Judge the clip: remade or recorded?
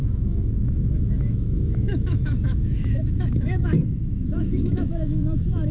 remade